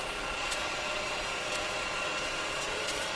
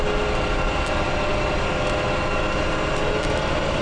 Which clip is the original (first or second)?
second